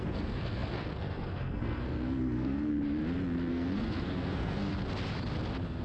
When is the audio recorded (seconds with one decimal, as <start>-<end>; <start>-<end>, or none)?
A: 2.7-3.5; 4.7-5.8